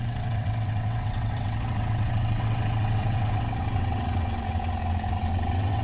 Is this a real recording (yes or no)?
no